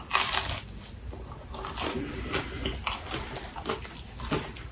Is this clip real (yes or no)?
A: yes